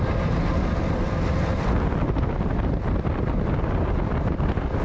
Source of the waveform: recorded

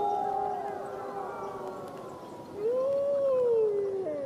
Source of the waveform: recorded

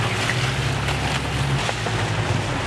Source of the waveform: recorded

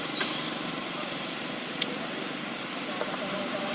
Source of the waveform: remade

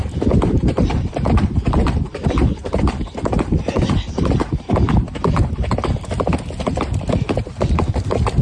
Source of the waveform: recorded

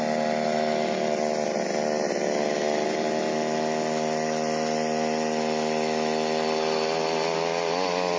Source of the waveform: recorded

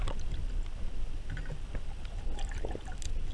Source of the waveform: recorded